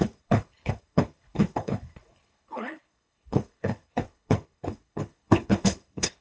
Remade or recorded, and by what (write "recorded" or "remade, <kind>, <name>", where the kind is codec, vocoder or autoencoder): remade, codec, HILCodec